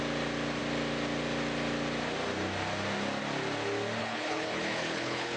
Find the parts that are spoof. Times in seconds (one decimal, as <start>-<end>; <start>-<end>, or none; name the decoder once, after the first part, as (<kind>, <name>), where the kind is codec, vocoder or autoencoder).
4.0-5.4 (codec, HILCodec)